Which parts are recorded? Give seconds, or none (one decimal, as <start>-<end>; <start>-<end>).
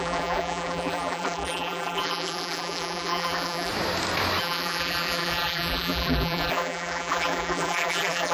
3.7-4.4